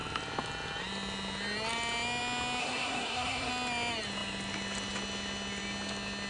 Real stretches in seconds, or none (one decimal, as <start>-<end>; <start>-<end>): 0.0-2.6; 3.5-6.3